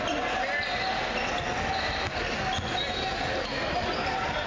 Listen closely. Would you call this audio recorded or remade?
recorded